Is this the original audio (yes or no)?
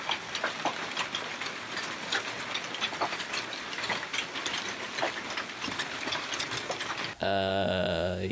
yes